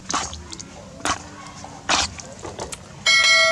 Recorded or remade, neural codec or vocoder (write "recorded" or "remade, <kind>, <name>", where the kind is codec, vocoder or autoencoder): recorded